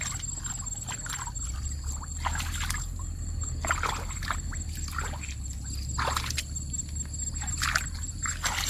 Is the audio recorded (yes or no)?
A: yes